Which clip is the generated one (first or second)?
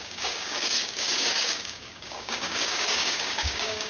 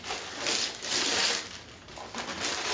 first